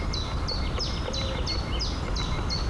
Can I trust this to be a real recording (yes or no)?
yes